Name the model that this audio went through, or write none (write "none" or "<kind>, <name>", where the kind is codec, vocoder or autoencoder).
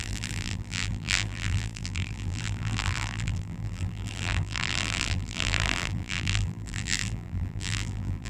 vocoder, BigVGAN v2